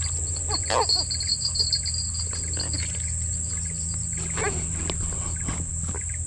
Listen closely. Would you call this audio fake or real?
real